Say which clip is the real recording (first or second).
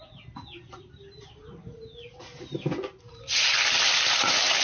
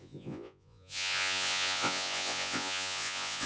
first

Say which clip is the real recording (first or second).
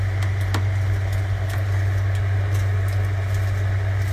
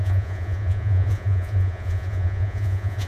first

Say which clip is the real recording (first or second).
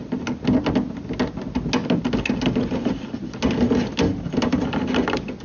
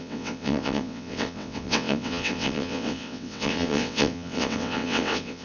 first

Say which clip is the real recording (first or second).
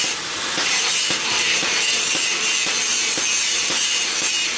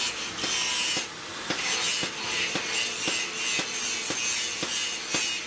second